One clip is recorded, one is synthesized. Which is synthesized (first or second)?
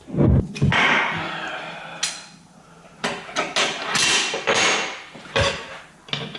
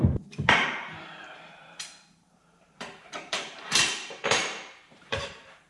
second